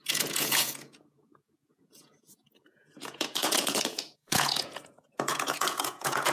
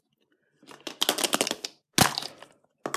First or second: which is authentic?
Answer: second